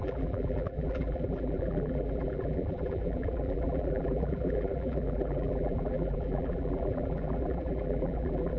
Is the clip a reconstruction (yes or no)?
yes